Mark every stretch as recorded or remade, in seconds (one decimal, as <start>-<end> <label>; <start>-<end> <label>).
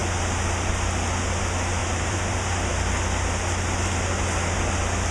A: 0.0-1.8 recorded; 1.8-2.7 remade; 2.7-5.1 recorded